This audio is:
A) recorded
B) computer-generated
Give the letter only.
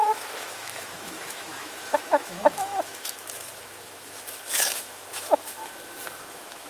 B